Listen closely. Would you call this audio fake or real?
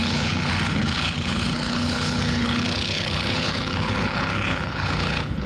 fake